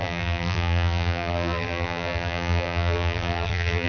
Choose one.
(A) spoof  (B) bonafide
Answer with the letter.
A